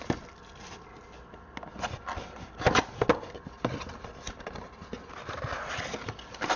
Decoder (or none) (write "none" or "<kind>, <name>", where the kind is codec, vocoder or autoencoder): none